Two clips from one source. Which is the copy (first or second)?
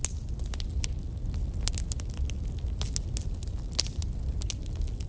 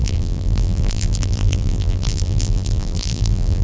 second